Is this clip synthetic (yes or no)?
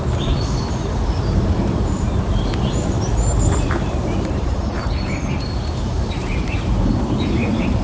yes